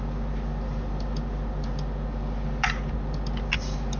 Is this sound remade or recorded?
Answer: recorded